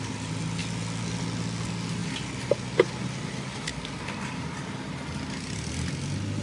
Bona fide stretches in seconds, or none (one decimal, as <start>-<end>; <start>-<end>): 0.0-6.4